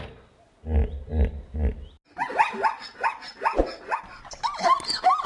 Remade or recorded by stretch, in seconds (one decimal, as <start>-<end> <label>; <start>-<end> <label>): 0.0-5.3 recorded